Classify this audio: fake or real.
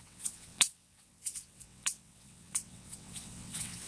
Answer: fake